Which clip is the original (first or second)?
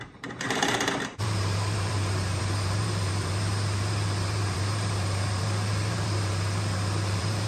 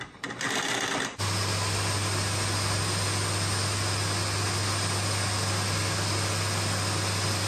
second